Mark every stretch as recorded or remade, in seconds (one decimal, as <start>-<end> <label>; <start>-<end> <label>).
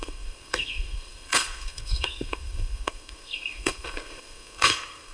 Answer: 0.0-5.1 remade